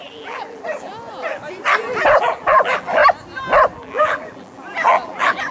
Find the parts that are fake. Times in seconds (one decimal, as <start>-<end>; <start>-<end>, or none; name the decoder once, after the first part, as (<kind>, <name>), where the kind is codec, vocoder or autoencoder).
0.0-0.9 (vocoder, BigVGAN v2); 2.2-3.0; 3.7-5.5